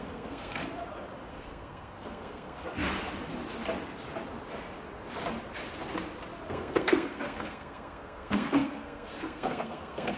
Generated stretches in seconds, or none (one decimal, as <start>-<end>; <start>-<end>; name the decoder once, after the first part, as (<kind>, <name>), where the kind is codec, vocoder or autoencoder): 0.0-0.6 (codec, SNAC); 1.3-2.8; 6.5-10.2